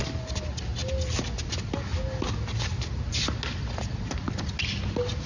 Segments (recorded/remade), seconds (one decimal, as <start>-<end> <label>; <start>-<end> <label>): 0.0-5.3 recorded